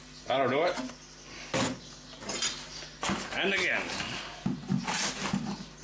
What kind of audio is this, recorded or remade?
recorded